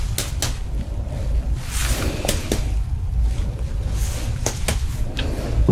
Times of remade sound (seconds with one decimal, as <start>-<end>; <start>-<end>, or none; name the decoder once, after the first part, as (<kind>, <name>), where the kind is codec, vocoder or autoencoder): none